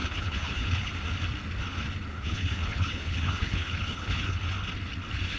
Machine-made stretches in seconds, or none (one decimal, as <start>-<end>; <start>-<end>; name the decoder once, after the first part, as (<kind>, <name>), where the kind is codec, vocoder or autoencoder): 0.0-0.9 (codec, HILCodec); 2.1-4.4